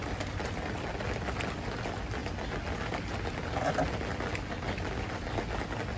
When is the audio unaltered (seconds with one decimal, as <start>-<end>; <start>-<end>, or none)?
0.0-6.0